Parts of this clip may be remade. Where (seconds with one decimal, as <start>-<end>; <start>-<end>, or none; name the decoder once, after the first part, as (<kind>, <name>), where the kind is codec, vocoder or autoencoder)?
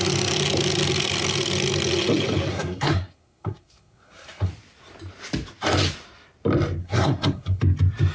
2.5-4.5 (codec, SNAC); 6.8-7.6